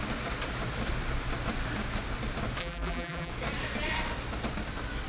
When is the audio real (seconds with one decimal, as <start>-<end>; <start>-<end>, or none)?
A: 0.0-2.6; 3.3-5.1